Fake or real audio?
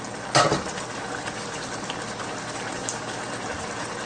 real